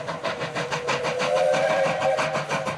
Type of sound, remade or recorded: remade